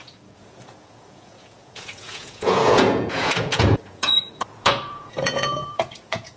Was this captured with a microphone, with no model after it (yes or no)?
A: no